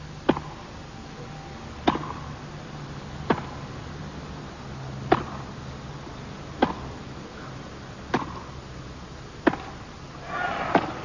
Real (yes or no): yes